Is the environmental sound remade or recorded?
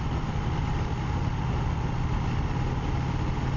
recorded